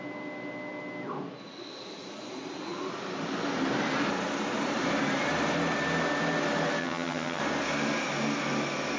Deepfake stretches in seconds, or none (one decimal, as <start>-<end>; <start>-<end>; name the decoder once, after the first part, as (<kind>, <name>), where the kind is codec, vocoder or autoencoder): 6.8-7.4 (vocoder, HiFi-GAN)